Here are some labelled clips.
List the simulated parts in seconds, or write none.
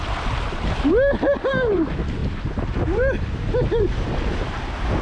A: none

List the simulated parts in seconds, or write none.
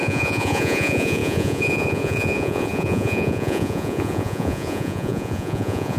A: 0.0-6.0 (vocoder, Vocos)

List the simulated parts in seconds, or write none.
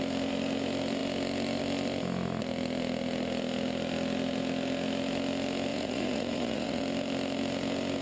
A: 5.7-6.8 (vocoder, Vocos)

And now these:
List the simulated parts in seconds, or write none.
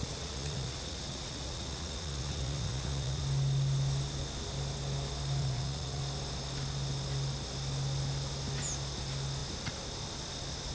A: 0.0-3.2 (vocoder, Vocos); 5.4-6.0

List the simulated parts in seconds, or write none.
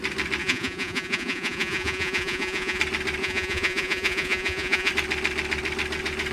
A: 0.4-2.8 (vocoder, Vocos); 3.2-4.9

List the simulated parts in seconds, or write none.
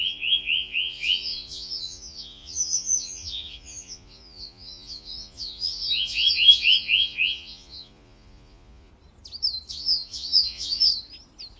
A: 0.0-8.9 (vocoder, Vocos); 9.7-10.9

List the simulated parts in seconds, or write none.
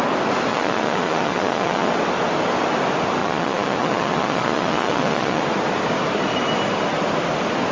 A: 0.5-1.9 (vocoder, Vocos); 3.2-5.4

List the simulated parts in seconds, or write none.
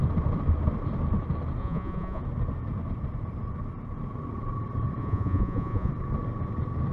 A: 1.6-2.2 (vocoder, Vocos); 5.0-5.9